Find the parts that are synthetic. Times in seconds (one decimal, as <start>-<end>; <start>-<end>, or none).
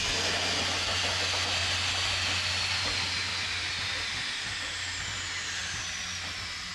none